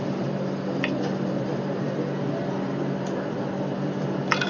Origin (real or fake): real